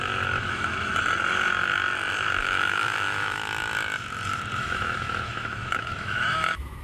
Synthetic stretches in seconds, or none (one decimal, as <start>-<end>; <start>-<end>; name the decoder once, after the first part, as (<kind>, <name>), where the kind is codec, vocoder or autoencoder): 0.0-0.9 (autoencoder, DAC-VAE); 2.4-3.4; 4.6-6.8